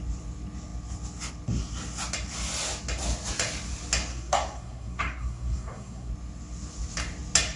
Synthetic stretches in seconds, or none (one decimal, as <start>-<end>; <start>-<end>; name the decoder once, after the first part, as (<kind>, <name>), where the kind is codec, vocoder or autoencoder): 4.1-6.1 (codec, SNAC)